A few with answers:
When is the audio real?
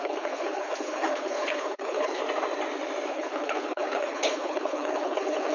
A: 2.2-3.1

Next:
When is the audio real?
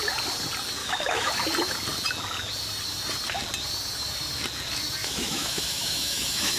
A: 0.0-0.8; 1.3-5.0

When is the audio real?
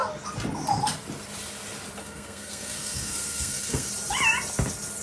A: 0.0-2.0; 3.9-5.0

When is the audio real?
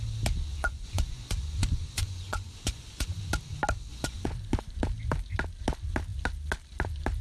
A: 0.0-0.5; 3.2-3.9; 4.8-7.2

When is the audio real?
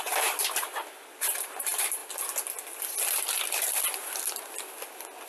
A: 2.0-5.3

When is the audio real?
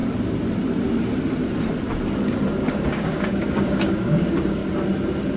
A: 0.0-2.5; 4.6-5.4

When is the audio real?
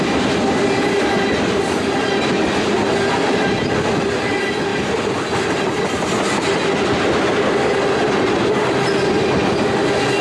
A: 0.0-10.2